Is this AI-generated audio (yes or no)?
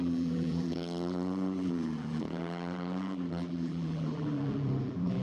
yes